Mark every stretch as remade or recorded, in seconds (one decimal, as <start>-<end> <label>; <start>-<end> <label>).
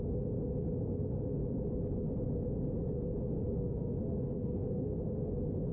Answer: 0.0-3.4 recorded; 3.4-4.0 remade; 4.0-4.4 recorded; 4.4-5.0 remade; 5.0-5.7 recorded